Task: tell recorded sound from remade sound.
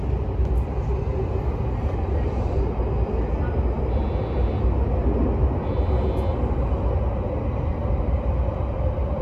recorded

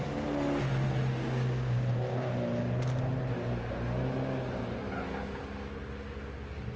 recorded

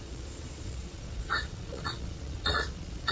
remade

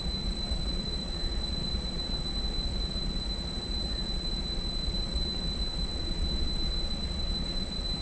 remade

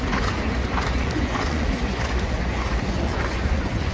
remade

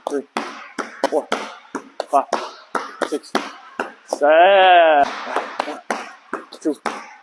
recorded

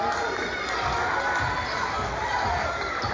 recorded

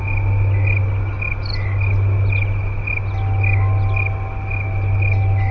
recorded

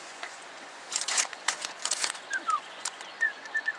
remade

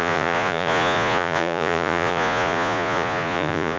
remade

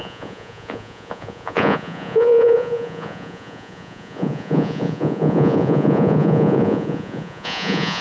remade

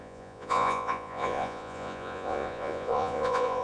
remade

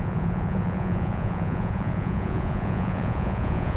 remade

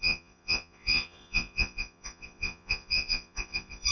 remade